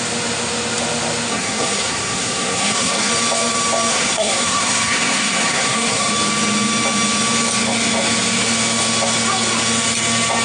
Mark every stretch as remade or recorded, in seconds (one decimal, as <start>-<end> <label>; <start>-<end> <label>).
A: 0.0-1.3 recorded; 1.3-3.1 remade; 3.1-3.9 recorded; 3.9-6.1 remade; 6.1-10.4 recorded